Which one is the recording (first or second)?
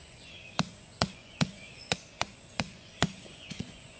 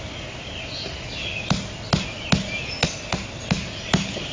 second